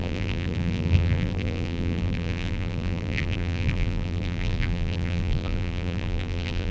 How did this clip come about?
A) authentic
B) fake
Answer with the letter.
B